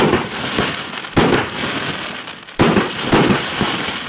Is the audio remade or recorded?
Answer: recorded